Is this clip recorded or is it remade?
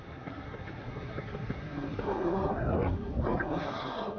remade